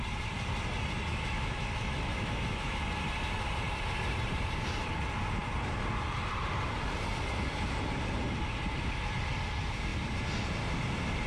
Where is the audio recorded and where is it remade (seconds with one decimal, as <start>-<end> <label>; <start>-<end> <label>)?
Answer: 0.0-1.1 recorded; 1.1-2.8 remade; 2.8-11.3 recorded